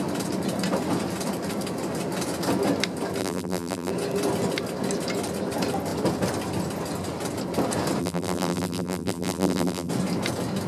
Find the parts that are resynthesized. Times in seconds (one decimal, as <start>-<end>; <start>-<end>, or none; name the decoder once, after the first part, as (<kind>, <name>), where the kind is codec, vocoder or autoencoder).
3.2-3.9 (vocoder, BigVGAN v2); 8.0-9.9